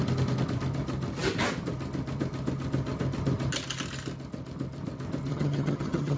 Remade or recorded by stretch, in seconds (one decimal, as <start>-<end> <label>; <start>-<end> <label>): 0.0-5.3 recorded; 5.3-6.2 remade